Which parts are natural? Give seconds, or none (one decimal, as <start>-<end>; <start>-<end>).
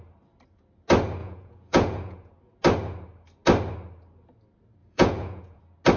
0.0-1.2; 2.3-4.8; 5.6-6.0